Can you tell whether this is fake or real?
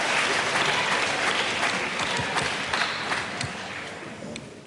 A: real